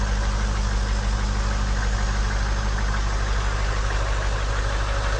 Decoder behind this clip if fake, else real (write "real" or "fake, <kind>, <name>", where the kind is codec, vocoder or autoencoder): real